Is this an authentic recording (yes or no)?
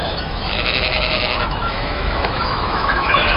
no